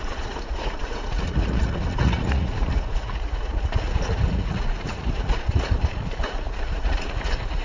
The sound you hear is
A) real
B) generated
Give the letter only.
B